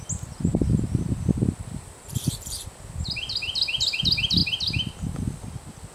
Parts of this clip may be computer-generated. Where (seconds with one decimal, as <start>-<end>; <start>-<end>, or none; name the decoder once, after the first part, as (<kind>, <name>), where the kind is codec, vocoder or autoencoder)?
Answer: 0.5-4.0 (vocoder, BigVGAN v2)